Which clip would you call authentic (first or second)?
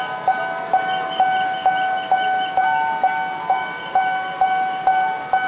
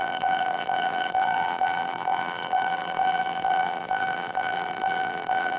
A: first